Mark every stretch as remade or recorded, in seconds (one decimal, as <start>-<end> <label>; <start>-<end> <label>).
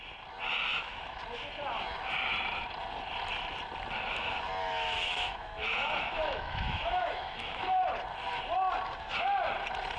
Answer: 0.0-0.7 recorded; 0.7-1.2 remade; 1.2-4.6 recorded; 4.6-7.8 remade; 7.8-10.0 recorded